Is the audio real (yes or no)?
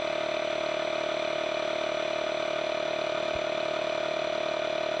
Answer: yes